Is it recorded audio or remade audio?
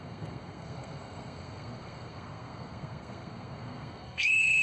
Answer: remade